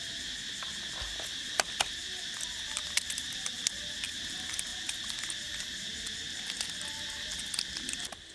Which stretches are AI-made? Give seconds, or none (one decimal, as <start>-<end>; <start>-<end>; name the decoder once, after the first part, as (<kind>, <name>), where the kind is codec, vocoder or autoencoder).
4.7-5.2 (vocoder, BigVGAN v2)

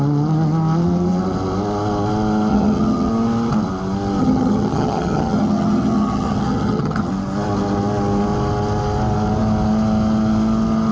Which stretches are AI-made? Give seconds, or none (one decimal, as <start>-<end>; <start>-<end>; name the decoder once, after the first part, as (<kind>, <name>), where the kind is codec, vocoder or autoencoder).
2.5-3.1 (vocoder, HiFi-GAN); 4.2-7.1